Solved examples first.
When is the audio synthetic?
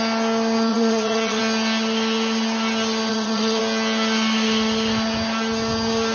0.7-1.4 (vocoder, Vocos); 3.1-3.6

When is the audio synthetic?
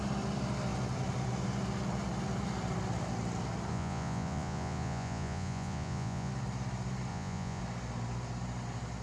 3.7-6.3 (vocoder, Vocos); 7.1-7.6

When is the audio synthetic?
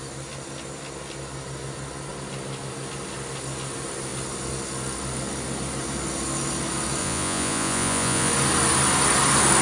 7.0-8.3 (vocoder, Vocos)